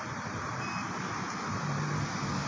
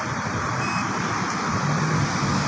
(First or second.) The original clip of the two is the first